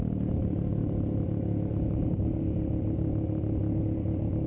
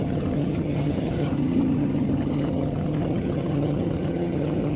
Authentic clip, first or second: first